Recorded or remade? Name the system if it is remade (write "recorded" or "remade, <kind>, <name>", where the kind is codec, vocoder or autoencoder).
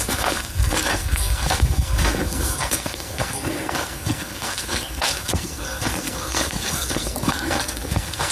remade, codec, SNAC